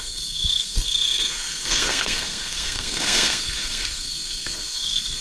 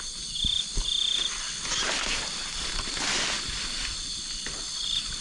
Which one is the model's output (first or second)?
first